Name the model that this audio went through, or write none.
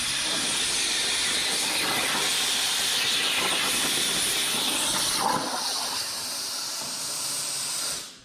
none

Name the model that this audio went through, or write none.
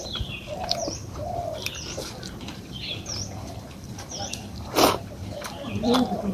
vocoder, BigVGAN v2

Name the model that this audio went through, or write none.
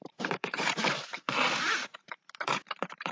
vocoder, BigVGAN v2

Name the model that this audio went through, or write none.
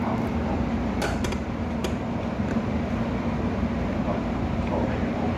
vocoder, BigVGAN v2